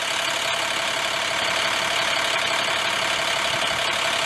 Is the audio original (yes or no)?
yes